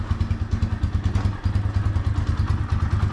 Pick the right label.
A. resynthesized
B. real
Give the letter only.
B